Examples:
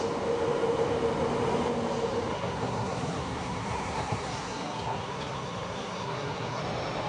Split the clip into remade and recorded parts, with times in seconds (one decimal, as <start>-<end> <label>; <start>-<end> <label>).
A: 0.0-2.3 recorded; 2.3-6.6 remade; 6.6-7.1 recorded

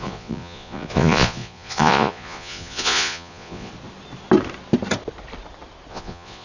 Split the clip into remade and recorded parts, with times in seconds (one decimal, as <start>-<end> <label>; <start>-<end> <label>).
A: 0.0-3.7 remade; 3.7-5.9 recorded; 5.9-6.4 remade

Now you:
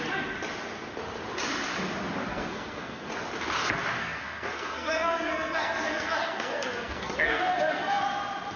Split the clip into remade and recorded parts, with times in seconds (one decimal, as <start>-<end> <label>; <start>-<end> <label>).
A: 0.0-2.3 recorded; 2.3-3.1 remade; 3.1-4.0 recorded; 4.0-8.0 remade; 8.0-8.6 recorded